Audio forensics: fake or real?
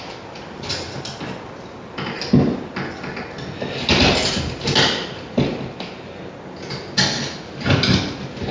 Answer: real